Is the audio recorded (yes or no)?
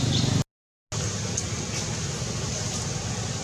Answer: yes